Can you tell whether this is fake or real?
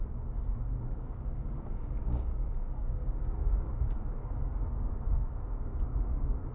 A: fake